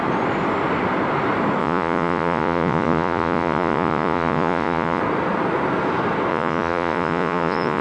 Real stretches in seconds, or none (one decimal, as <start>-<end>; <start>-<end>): 0.0-1.6; 5.0-6.3